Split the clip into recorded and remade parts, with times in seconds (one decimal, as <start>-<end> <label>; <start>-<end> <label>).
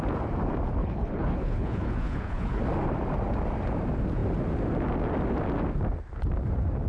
0.0-0.8 recorded; 0.8-2.6 remade; 2.6-6.9 recorded